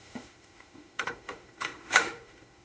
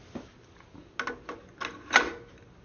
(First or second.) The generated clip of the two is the first